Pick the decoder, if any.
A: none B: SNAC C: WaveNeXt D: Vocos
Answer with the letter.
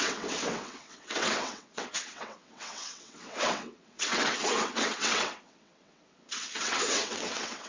C